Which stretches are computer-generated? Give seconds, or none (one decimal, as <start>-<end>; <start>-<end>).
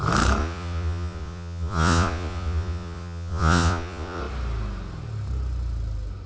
0.4-4.2